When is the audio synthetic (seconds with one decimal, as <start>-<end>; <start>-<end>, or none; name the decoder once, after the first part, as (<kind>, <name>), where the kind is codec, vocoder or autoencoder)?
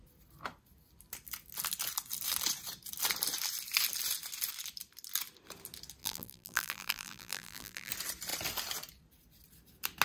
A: 6.0-7.9 (vocoder, BigVGAN v2)